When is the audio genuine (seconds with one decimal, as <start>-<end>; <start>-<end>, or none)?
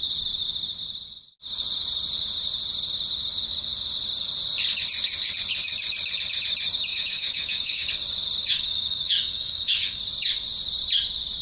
0.0-6.9; 7.9-8.4; 10.0-11.4